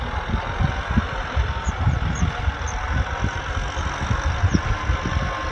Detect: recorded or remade recorded